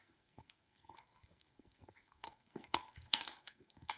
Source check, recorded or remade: remade